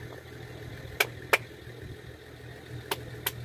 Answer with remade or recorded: recorded